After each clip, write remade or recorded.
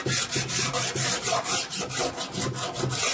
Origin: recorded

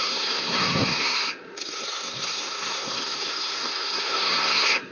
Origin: remade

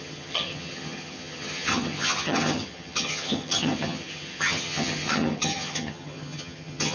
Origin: remade